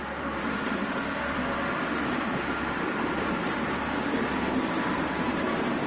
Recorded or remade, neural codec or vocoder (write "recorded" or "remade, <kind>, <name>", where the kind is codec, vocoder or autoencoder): remade, vocoder, BigVGAN v2